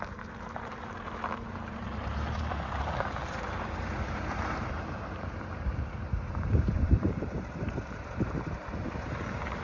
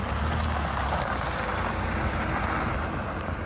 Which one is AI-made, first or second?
first